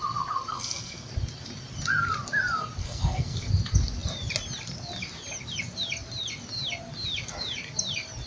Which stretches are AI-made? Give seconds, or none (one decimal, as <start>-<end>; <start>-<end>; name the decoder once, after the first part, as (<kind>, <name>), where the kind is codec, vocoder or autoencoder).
0.5-1.1 (codec, SNAC); 2.8-3.5